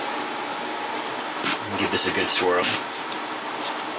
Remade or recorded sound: recorded